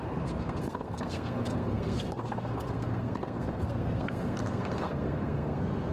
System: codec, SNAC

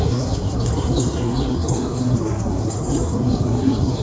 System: codec, SNAC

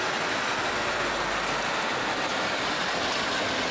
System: none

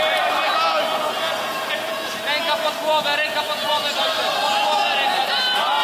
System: none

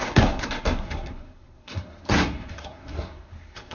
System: codec, SNAC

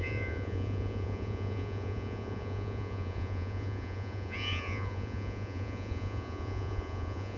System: vocoder, Vocos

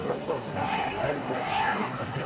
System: codec, SNAC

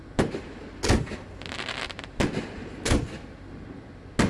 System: none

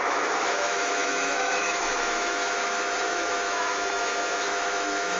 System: autoencoder, DAC-VAE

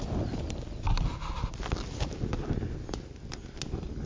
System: none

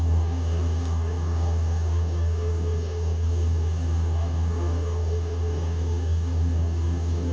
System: codec, DAC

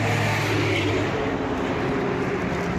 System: none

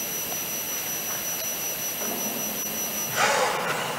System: none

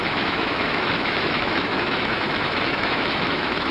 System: autoencoder, DAC-VAE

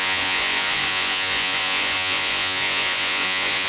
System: vocoder, Vocos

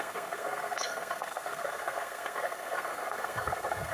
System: codec, SNAC